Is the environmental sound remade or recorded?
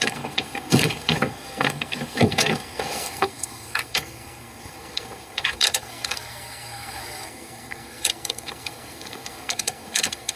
remade